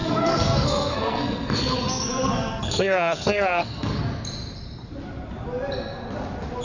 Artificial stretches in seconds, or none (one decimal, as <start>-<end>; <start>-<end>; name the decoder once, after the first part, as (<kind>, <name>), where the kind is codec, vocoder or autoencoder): 0.0-4.0 (codec, SNAC)